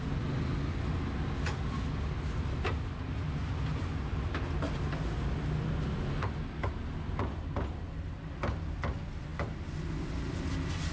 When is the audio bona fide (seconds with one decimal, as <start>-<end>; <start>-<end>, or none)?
0.0-10.9